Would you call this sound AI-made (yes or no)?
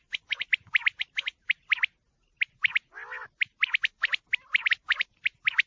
no